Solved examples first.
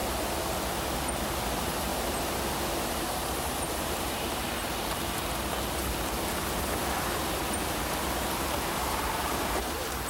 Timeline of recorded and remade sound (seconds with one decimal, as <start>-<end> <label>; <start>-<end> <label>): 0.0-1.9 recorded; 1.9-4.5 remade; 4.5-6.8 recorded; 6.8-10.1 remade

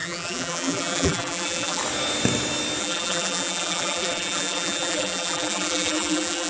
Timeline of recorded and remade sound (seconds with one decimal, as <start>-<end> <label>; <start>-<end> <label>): 0.0-1.8 remade; 1.8-2.8 recorded; 2.8-6.5 remade

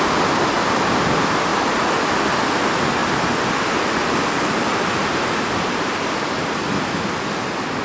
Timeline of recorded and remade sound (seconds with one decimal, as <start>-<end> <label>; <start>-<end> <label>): 0.0-1.5 recorded; 1.5-2.1 remade; 2.1-7.8 recorded

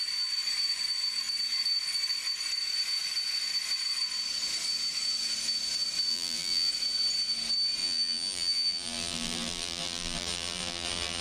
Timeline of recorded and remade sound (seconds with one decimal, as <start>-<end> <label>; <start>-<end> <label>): 0.0-6.1 recorded; 6.1-6.7 remade; 6.7-7.8 recorded; 7.8-11.2 remade

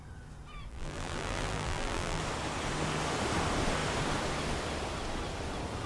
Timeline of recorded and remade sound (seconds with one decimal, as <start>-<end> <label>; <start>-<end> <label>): 0.0-0.7 recorded; 0.7-2.2 remade; 2.2-5.9 recorded

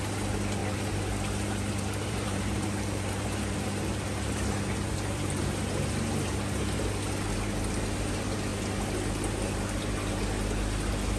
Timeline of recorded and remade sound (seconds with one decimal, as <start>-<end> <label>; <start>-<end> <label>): 0.0-0.6 recorded; 0.6-5.7 remade; 5.7-11.2 recorded

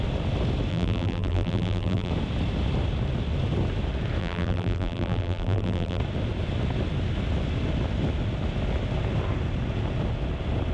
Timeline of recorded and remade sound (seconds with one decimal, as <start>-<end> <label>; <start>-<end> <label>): 0.0-0.7 recorded; 0.7-2.1 remade; 2.1-4.2 recorded; 4.2-6.0 remade; 6.0-10.7 recorded